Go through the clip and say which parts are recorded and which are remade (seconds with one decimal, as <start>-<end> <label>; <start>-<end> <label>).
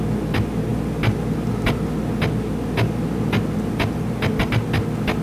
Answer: 0.0-5.2 recorded